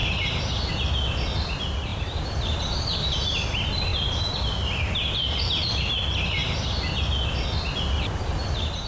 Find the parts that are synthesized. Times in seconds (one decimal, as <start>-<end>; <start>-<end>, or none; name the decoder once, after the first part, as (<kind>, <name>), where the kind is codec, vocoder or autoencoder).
none